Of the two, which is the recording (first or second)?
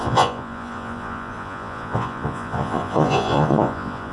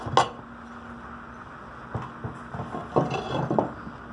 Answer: second